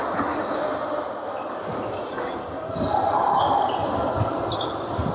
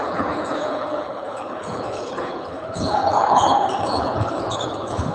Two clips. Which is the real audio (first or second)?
first